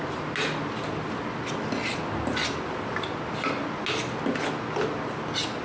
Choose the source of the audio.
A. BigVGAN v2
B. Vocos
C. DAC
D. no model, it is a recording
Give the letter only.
D